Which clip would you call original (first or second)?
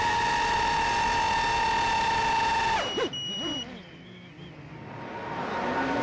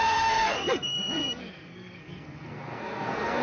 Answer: first